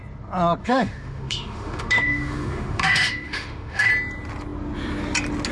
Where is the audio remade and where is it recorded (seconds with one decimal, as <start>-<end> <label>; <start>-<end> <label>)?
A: 0.0-0.6 recorded; 0.6-3.9 remade; 3.9-5.5 recorded

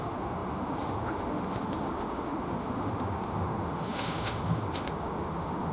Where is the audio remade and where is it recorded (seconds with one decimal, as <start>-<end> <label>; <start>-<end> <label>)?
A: 0.0-5.7 remade

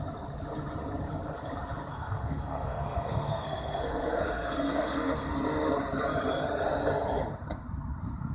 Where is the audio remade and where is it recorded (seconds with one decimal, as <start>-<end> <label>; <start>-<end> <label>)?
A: 0.0-1.9 recorded; 1.9-5.3 remade; 5.3-8.3 recorded

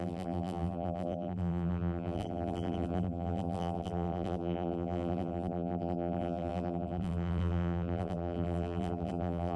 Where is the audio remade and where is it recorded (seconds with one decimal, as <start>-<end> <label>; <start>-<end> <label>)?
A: 0.0-9.6 remade

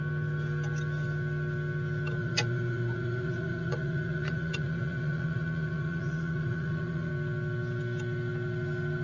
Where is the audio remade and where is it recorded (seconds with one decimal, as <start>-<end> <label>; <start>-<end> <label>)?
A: 0.0-2.2 recorded; 2.2-7.1 remade; 7.1-9.0 recorded